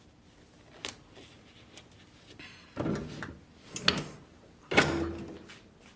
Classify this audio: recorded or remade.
recorded